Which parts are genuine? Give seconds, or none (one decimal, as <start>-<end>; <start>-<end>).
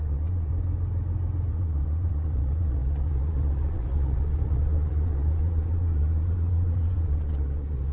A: 0.5-1.5